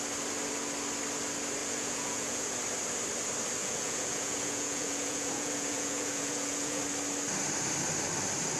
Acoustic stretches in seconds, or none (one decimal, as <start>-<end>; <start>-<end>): 0.0-1.6; 2.6-3.6; 6.8-8.6